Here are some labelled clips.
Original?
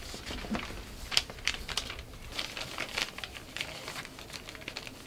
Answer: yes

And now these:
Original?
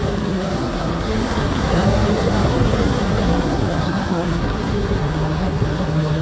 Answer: no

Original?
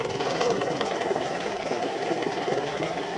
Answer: no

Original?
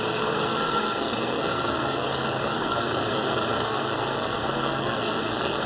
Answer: no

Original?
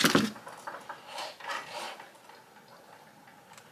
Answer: yes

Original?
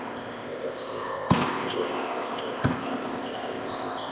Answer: no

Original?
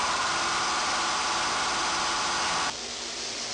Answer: yes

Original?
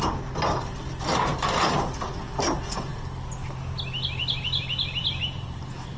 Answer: yes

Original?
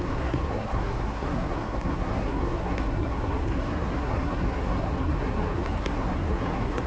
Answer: no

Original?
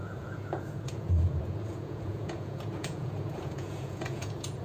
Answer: no